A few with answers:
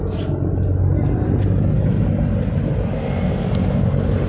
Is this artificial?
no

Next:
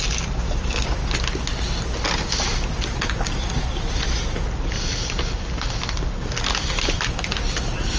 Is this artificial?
no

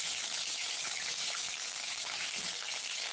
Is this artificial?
yes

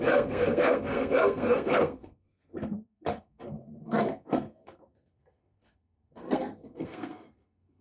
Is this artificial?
yes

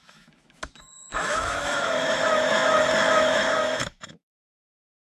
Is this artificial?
yes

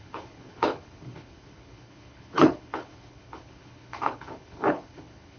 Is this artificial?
yes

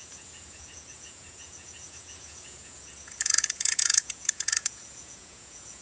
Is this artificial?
yes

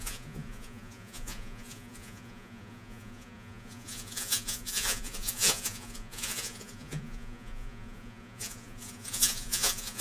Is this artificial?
yes